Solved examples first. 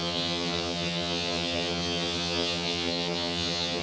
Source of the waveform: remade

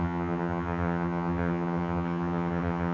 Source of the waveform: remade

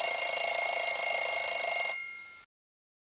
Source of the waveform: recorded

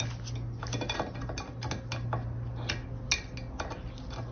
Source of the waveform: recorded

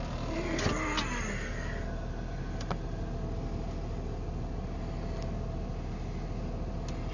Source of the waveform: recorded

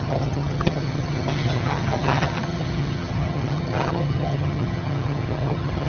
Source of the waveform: remade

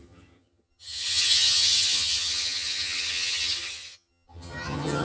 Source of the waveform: remade